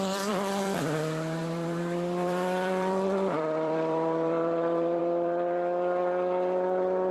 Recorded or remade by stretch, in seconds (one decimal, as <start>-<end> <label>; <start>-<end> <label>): 0.0-7.1 remade